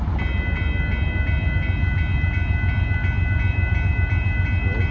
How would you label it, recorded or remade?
recorded